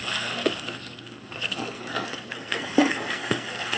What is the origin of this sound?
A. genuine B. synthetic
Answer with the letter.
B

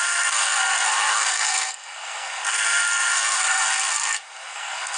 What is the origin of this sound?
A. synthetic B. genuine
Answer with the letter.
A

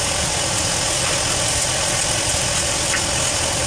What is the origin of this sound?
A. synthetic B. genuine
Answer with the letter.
B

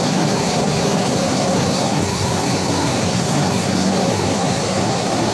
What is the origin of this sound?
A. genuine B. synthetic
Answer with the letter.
B